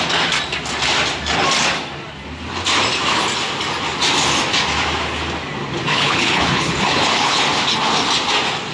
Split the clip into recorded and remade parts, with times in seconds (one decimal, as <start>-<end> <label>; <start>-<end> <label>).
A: 0.0-5.9 recorded; 5.9-7.4 remade; 7.4-8.7 recorded